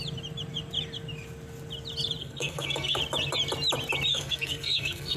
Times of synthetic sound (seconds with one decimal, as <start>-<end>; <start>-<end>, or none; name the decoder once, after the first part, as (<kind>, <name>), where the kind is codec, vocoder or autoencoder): 2.2-3.0 (codec, SNAC); 4.1-5.2